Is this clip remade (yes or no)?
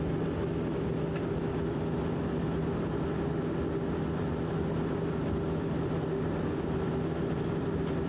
no